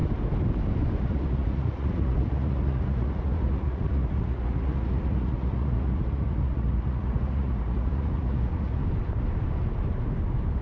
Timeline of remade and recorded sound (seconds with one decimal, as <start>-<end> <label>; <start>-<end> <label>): 0.0-1.0 recorded; 1.0-8.8 remade; 8.8-10.6 recorded

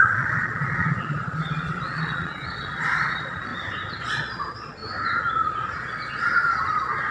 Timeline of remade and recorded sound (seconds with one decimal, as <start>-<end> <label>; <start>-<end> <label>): 0.0-3.5 remade; 3.5-4.0 recorded; 4.0-4.8 remade; 4.8-5.3 recorded; 5.3-7.1 remade

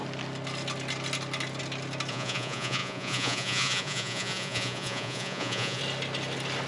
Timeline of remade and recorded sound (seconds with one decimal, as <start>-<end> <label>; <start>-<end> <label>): 0.0-2.1 recorded; 2.1-5.8 remade; 5.8-6.7 recorded

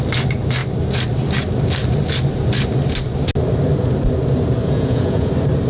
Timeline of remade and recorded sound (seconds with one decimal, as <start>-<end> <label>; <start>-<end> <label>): 0.0-4.6 recorded; 4.6-5.3 remade; 5.3-5.7 recorded

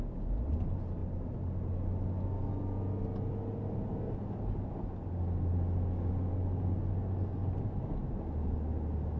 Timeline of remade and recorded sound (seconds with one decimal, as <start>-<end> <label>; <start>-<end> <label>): 0.0-9.2 recorded

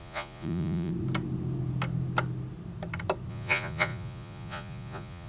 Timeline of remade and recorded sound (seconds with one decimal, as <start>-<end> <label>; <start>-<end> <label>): 0.0-0.9 remade; 0.9-3.3 recorded; 3.3-5.3 remade